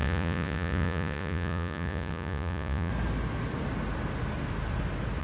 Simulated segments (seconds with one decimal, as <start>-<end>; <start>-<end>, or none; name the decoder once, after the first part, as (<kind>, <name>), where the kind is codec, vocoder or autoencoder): 0.0-2.9 (vocoder, Vocos)